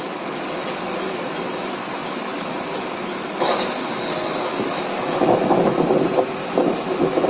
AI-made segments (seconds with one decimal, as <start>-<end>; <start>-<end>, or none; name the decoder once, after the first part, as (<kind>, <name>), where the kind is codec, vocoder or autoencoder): 0.0-5.7 (autoencoder, DAC-VAE); 6.3-7.3